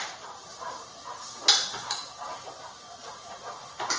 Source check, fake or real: real